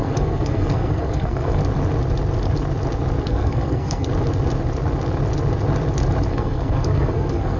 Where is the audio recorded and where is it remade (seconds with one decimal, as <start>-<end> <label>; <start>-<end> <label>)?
0.0-1.6 remade; 1.6-3.2 recorded; 3.2-4.1 remade; 4.1-6.3 recorded; 6.3-7.6 remade